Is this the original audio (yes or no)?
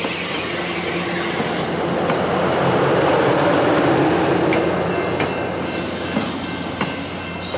yes